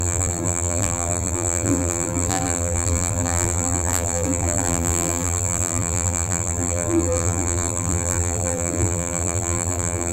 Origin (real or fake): fake